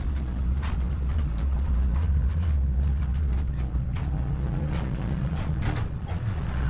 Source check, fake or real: fake